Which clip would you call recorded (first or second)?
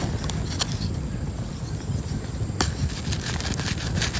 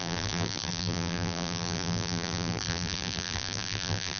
first